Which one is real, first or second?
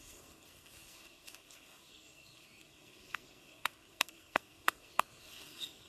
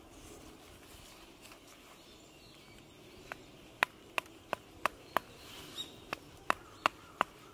second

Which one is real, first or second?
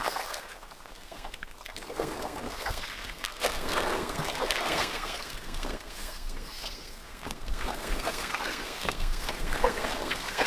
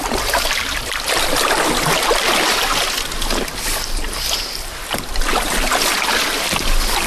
second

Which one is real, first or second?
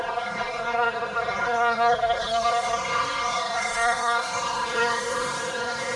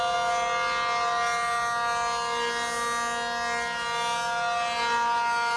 second